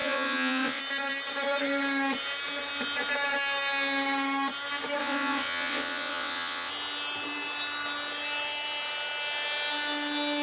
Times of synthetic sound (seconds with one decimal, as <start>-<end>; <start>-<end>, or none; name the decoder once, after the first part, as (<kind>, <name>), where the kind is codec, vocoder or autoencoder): 0.0-0.8 (vocoder, WaveNeXt); 5.0-6.7